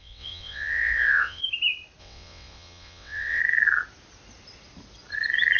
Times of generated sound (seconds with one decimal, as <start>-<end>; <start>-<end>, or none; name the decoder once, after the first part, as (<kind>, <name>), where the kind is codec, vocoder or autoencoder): 0.0-1.4 (vocoder, WaveNeXt); 2.0-3.4